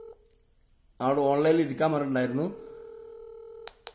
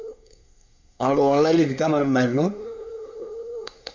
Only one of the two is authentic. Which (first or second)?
first